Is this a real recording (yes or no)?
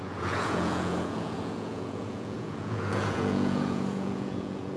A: no